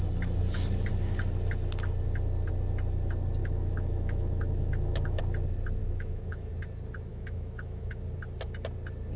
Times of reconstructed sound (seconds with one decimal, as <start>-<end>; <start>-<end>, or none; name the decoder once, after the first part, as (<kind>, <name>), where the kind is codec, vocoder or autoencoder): 3.4-5.2 (autoencoder, DAC-VAE); 5.8-6.5; 7.1-8.0